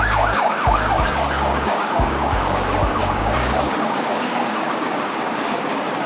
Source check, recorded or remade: remade